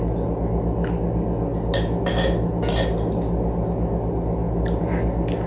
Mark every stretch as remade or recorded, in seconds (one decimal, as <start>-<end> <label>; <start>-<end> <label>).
0.0-5.5 recorded